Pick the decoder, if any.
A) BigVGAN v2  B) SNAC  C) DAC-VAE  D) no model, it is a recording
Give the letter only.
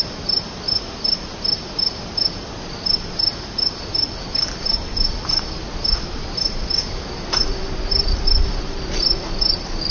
D